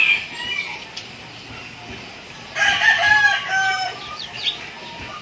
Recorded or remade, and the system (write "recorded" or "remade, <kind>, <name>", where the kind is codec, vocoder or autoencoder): recorded